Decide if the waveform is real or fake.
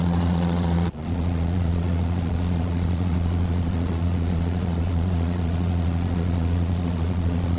fake